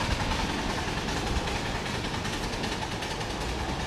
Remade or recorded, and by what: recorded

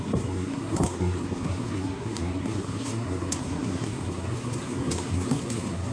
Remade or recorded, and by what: remade, codec, SNAC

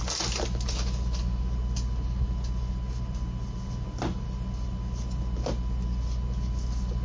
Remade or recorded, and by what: recorded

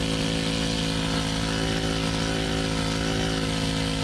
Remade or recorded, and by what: recorded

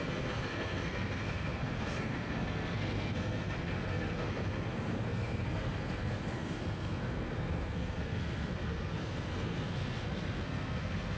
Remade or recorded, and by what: remade, codec, SNAC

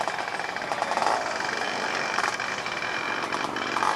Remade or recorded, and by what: recorded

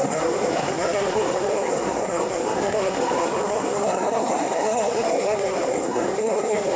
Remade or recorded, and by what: remade, codec, SNAC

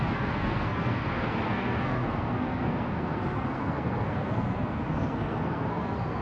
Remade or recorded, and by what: remade, codec, SNAC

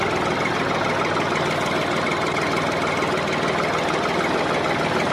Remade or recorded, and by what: recorded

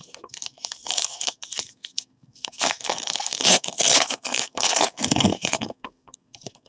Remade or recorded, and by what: remade, codec, SNAC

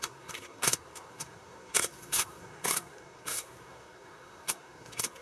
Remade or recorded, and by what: remade, codec, SNAC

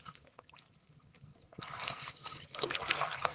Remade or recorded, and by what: remade, codec, SNAC